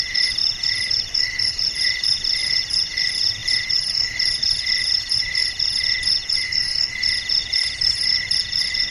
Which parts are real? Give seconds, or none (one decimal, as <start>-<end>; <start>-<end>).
0.4-1.5; 5.4-7.4